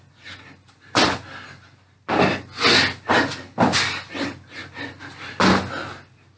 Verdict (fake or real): real